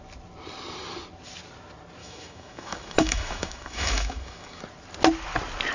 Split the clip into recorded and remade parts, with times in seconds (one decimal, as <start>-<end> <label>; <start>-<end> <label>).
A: 0.0-2.0 recorded; 2.0-4.6 remade; 4.6-5.7 recorded